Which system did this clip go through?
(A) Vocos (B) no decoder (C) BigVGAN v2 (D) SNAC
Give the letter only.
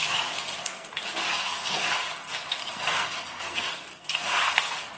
D